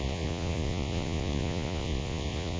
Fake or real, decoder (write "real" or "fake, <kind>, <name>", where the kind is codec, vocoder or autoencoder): fake, vocoder, Vocos